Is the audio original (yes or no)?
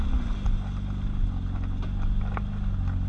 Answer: yes